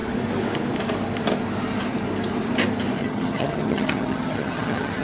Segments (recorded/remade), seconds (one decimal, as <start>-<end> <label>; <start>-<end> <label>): 0.0-3.0 recorded; 3.0-5.0 remade